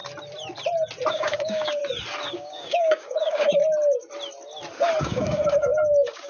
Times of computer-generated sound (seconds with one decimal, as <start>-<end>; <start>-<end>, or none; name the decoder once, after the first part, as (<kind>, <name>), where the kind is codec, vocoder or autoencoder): 1.1-1.8 (codec, DAC); 2.3-3.6; 5.0-6.3